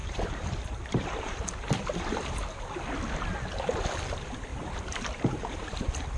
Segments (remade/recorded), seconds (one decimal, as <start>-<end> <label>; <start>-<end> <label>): 0.0-2.5 remade; 2.5-4.5 recorded; 4.5-5.4 remade; 5.4-6.2 recorded